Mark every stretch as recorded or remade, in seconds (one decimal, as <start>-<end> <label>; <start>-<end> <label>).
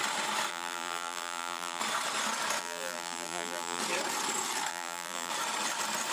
0.0-0.5 recorded; 0.5-1.8 remade; 1.8-2.6 recorded; 2.6-3.8 remade; 3.8-4.7 recorded; 4.7-5.3 remade; 5.3-6.1 recorded